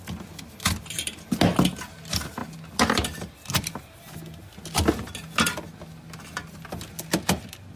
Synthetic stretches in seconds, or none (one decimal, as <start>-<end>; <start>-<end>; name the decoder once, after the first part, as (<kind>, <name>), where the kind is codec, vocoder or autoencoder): none